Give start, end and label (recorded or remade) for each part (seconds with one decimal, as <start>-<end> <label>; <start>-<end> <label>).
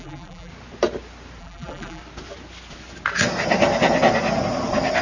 0.0-0.5 remade; 0.5-1.4 recorded; 1.4-2.0 remade; 2.0-5.0 recorded